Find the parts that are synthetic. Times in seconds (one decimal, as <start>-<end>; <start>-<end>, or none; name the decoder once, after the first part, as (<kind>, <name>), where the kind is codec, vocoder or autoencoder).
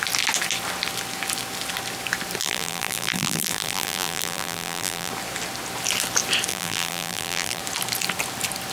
2.4-5.1 (vocoder, BigVGAN v2); 6.5-7.6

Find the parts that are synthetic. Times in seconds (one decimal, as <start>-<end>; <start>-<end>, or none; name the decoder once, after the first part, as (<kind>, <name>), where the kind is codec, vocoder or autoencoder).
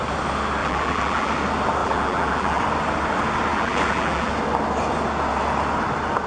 0.6-1.3 (vocoder, BigVGAN v2); 1.8-2.6; 3.5-4.3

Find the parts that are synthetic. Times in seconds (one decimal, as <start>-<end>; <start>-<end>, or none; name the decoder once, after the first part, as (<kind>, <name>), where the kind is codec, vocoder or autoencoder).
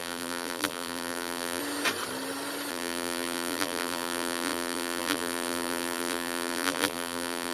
0.0-1.6 (vocoder, BigVGAN v2); 2.7-7.5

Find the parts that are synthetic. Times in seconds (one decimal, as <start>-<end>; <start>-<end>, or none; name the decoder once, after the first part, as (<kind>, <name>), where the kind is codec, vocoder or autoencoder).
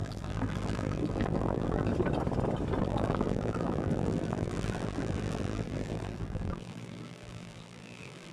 0.0-1.9 (vocoder, BigVGAN v2); 2.8-8.3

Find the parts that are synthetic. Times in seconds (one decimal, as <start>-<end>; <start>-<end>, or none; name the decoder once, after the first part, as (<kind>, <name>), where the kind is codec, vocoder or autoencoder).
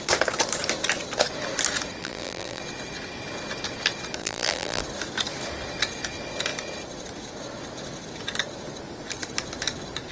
2.0-2.6 (vocoder, BigVGAN v2); 4.2-4.8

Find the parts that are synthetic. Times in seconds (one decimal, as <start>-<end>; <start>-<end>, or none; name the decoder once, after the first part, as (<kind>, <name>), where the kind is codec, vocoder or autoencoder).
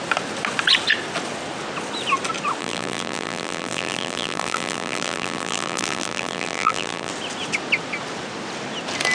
2.6-7.1 (vocoder, BigVGAN v2)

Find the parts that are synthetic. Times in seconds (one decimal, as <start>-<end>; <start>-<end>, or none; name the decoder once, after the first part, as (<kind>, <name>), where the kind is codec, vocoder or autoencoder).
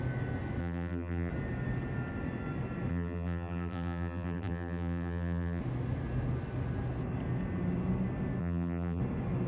0.6-1.3 (vocoder, BigVGAN v2); 2.9-5.6; 8.4-9.0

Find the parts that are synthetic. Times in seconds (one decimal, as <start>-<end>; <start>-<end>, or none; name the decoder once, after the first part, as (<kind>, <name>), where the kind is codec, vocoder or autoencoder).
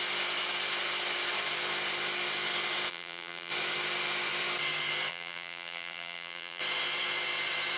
2.9-3.5 (vocoder, BigVGAN v2); 5.1-6.6